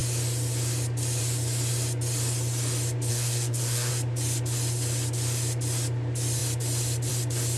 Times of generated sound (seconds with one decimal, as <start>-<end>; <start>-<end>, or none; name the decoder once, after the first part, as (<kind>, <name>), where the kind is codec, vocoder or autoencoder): 3.1-3.9 (codec, SNAC)